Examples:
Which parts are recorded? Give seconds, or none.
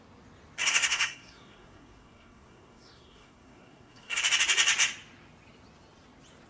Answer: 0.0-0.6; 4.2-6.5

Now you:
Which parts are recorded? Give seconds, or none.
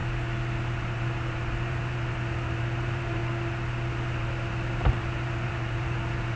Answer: 0.0-0.5; 3.2-3.9